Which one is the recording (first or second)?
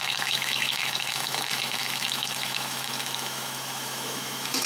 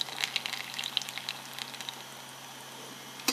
second